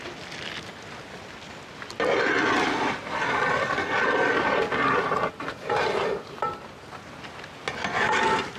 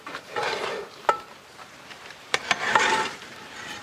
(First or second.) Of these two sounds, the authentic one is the first